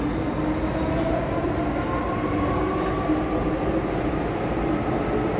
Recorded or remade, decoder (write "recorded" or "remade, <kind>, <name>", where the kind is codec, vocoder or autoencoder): recorded